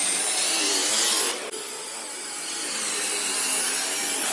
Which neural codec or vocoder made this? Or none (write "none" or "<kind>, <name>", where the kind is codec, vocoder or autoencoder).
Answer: none